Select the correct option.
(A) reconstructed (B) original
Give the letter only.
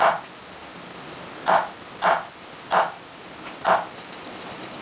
B